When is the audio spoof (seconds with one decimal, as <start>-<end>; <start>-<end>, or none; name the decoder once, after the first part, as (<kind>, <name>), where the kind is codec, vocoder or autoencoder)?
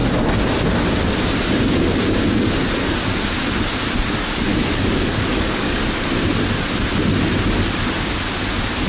4.5-5.8 (codec, DAC)